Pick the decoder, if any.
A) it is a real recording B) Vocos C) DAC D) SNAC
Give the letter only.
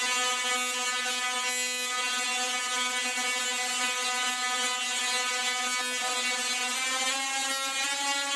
A